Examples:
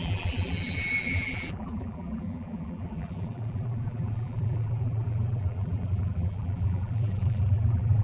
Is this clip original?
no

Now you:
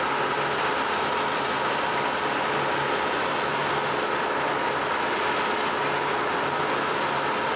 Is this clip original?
yes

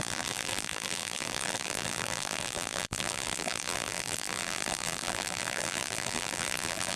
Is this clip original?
no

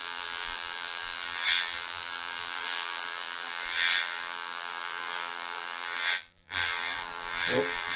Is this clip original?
no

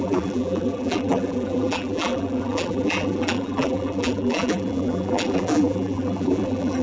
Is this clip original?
no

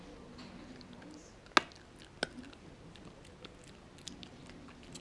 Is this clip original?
yes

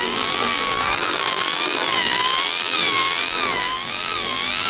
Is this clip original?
no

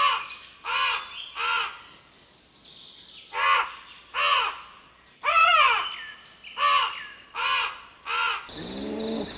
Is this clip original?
yes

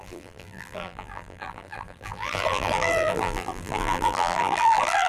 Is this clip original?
no